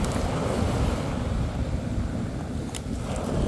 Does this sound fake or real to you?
real